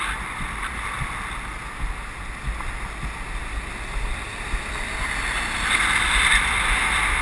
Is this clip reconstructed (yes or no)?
no